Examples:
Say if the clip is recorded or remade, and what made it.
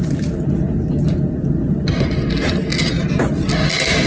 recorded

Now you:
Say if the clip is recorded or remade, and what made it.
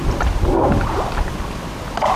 recorded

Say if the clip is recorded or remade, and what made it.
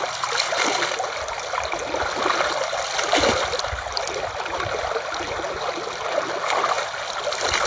recorded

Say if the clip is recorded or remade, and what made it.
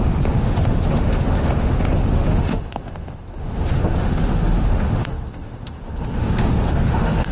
remade, autoencoder, DAC-VAE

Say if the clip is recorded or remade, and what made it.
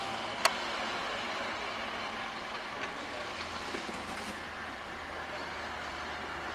recorded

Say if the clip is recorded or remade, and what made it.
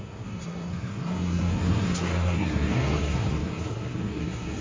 remade, codec, SNAC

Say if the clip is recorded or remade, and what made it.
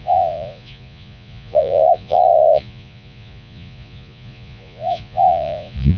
remade, vocoder, Vocos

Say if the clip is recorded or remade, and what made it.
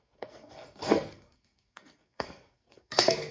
remade, codec, SNAC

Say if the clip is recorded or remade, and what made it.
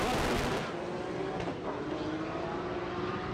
recorded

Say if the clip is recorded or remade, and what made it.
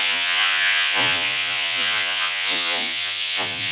remade, vocoder, Vocos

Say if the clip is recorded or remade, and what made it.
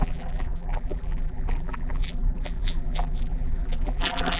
remade, vocoder, BigVGAN v2